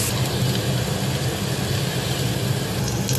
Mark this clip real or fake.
real